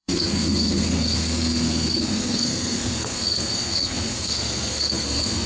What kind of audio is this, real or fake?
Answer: fake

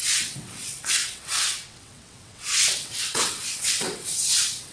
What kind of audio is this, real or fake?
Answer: fake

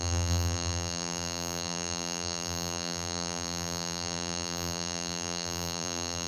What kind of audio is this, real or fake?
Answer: fake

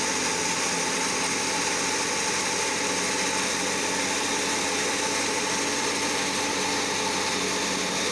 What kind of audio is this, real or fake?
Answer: real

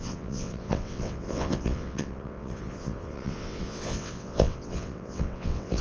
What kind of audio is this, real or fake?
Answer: fake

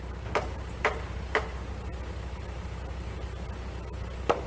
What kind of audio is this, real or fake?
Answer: real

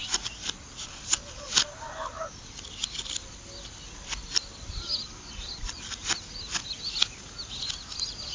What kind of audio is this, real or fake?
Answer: real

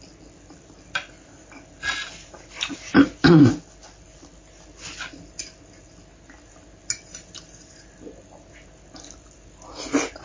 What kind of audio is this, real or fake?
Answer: real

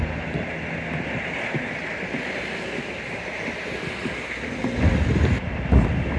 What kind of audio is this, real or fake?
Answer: real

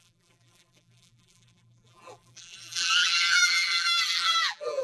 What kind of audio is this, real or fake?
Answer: fake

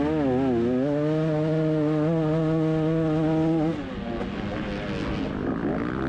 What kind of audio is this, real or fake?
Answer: real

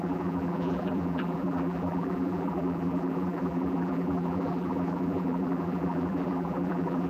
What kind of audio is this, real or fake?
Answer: fake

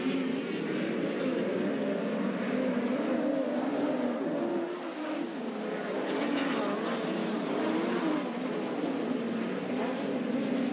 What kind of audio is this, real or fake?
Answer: real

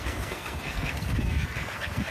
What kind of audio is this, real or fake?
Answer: fake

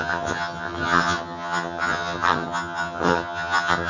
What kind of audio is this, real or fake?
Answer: fake